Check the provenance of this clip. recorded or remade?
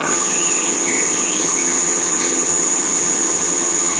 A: remade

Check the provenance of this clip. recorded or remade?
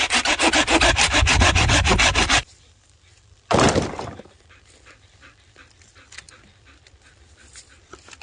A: recorded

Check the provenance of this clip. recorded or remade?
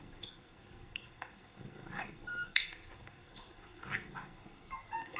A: remade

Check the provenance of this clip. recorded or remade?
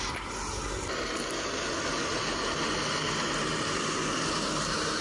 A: recorded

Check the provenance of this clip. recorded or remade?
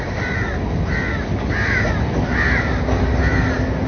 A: recorded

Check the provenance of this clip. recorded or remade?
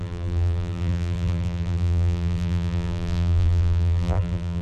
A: remade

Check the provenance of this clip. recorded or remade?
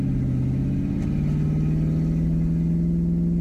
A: recorded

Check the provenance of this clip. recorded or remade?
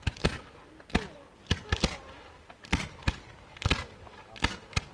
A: recorded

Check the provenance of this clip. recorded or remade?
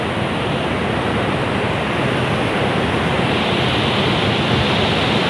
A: recorded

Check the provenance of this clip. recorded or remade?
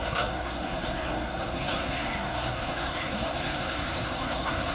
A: remade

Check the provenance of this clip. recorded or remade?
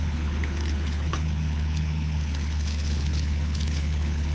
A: remade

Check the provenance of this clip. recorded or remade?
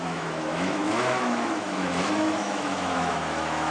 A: remade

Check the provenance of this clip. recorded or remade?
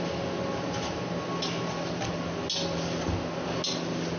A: recorded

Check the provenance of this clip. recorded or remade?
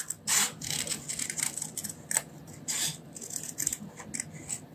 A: recorded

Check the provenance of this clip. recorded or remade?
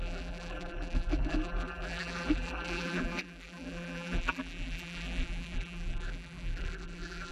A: remade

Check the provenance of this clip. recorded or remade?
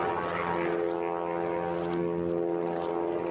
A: recorded